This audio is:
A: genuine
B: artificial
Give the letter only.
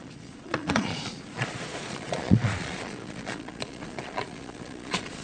B